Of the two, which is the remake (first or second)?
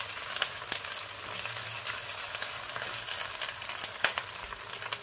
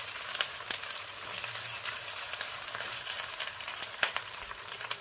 second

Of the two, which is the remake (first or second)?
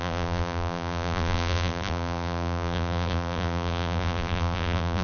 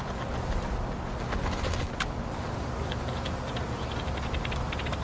first